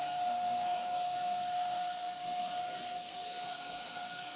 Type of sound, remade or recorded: remade